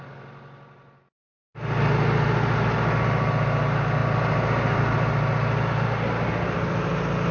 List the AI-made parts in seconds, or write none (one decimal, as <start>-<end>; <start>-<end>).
none